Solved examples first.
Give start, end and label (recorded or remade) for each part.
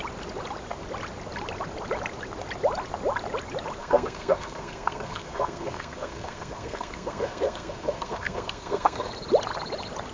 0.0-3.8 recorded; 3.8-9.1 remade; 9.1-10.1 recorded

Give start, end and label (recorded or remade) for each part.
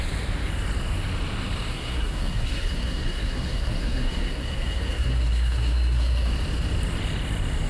0.0-1.7 recorded; 1.7-6.3 remade; 6.3-7.7 recorded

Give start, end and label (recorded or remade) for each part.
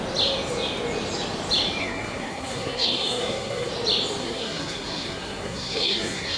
0.0-1.8 recorded; 1.8-3.7 remade; 3.7-4.2 recorded; 4.2-6.4 remade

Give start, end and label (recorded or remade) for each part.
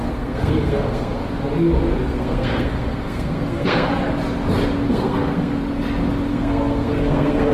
0.0-1.2 remade; 1.2-2.1 recorded; 2.1-3.9 remade; 3.9-4.9 recorded; 4.9-5.6 remade; 5.6-6.3 recorded; 6.3-7.5 remade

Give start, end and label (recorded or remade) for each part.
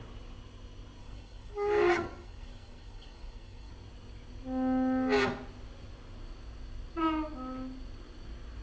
0.0-1.0 recorded; 1.0-3.7 remade; 3.7-8.6 recorded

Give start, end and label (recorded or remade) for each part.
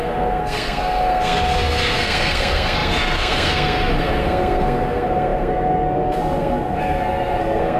0.0-7.8 remade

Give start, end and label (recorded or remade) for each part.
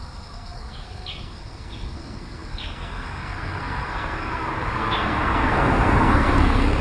0.0-6.8 remade